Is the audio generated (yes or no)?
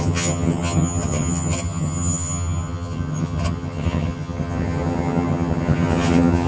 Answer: yes